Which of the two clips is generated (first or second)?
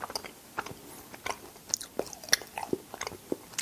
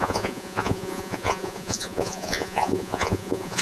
second